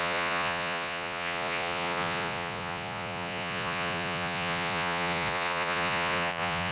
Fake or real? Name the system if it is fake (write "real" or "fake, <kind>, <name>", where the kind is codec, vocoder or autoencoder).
fake, vocoder, Vocos